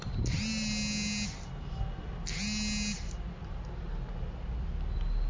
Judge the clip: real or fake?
real